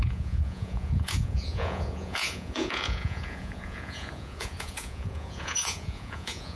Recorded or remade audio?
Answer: remade